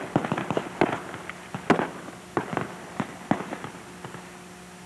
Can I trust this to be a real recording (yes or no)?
yes